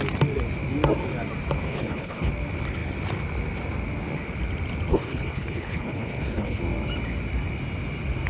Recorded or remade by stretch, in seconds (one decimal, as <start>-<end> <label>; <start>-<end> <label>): 0.0-1.7 recorded; 1.7-2.3 remade; 2.3-4.9 recorded; 4.9-6.6 remade; 6.6-8.3 recorded